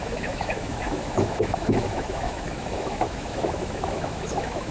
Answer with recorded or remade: remade